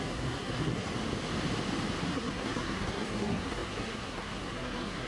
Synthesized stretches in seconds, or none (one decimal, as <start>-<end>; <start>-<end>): 0.0-0.9; 2.0-5.1